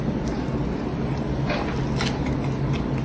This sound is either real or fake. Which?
real